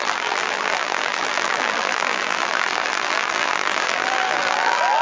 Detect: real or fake fake